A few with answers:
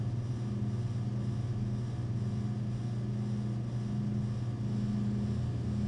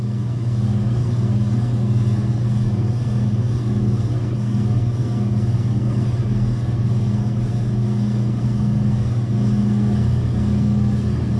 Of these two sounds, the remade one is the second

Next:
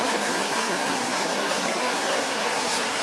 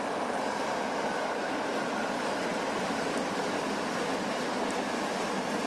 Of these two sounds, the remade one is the first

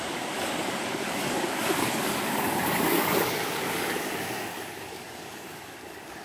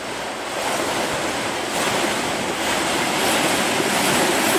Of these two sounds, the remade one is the first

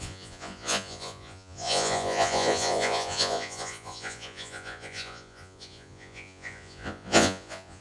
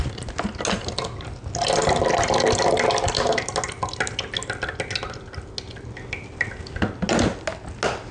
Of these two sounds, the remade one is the first